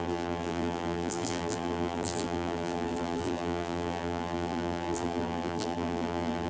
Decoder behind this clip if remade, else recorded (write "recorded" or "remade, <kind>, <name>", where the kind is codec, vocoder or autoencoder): remade, vocoder, BigVGAN v2